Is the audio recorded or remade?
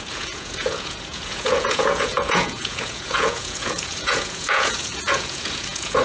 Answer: remade